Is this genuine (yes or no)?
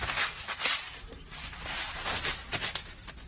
yes